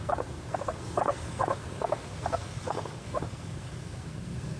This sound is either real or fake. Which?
fake